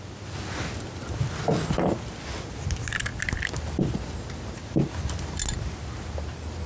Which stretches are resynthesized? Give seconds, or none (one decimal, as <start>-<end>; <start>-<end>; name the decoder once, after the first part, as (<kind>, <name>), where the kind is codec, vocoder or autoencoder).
none